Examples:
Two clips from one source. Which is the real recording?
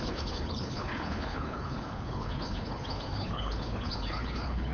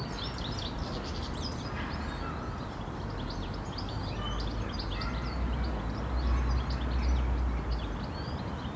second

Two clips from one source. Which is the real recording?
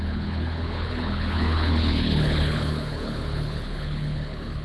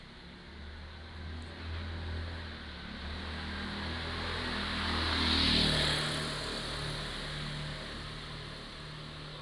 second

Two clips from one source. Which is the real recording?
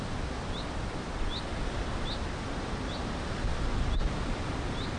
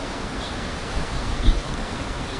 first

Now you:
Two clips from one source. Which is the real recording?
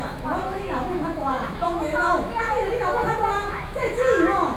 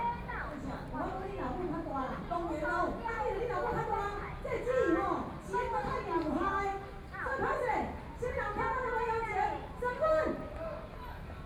second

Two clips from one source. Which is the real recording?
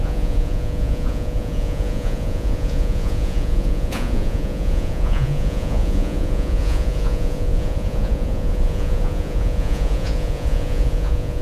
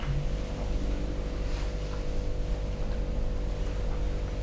second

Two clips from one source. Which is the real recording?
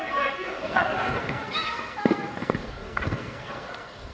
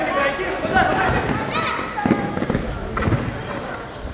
second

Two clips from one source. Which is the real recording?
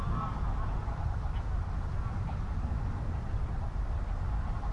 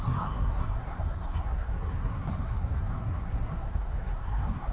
first